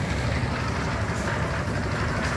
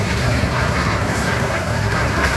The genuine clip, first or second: first